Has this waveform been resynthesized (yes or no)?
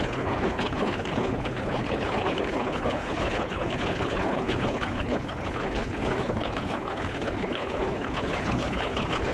yes